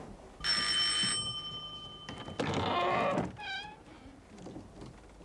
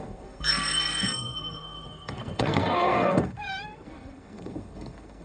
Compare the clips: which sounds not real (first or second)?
second